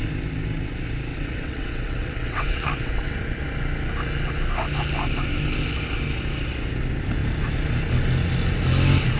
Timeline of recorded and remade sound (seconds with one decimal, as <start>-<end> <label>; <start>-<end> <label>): 0.0-1.1 recorded; 1.1-3.2 remade; 3.2-9.2 recorded